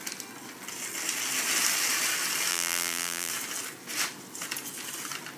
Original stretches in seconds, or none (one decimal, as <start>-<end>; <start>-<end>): 0.0-2.5; 3.3-5.4